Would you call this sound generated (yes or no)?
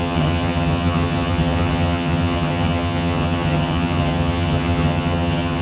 yes